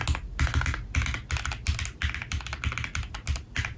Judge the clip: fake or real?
real